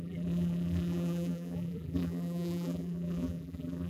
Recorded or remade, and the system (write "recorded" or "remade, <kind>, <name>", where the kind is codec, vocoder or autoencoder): remade, vocoder, BigVGAN v2